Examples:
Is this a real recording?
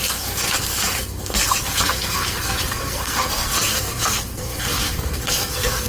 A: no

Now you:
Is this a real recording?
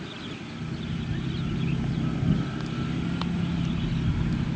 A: yes